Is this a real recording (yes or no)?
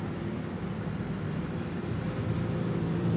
no